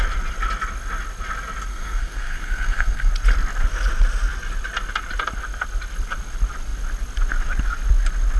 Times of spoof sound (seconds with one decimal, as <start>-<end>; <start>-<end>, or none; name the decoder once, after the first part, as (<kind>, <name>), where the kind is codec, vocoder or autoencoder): 1.7-3.1 (codec, SNAC)